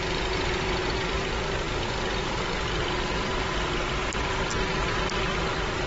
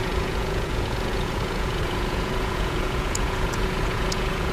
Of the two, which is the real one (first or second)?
first